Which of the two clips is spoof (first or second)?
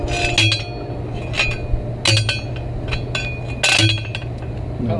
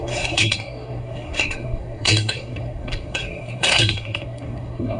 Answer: second